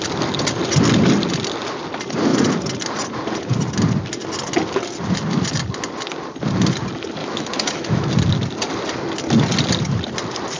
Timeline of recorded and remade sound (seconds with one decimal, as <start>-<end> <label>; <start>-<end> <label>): 0.0-7.2 recorded; 7.2-8.1 remade; 8.1-10.6 recorded